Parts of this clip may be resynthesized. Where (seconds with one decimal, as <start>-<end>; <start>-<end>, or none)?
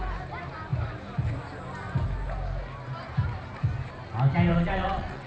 4.5-5.3